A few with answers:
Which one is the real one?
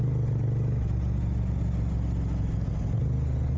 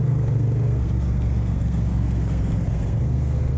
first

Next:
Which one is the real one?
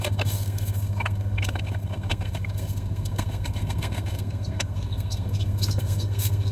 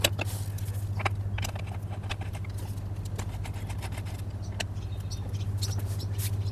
second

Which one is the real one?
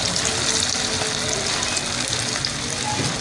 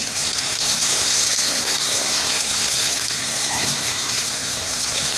first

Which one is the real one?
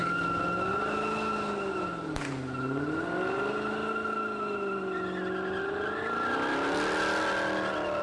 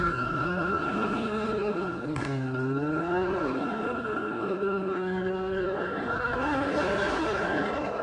first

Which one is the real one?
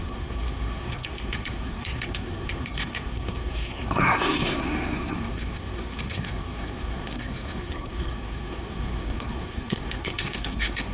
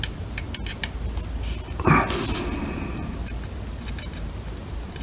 second